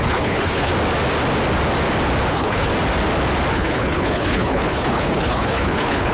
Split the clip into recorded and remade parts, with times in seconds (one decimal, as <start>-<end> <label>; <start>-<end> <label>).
0.0-0.7 remade; 0.7-2.3 recorded; 2.3-2.7 remade; 2.7-3.5 recorded; 3.5-6.1 remade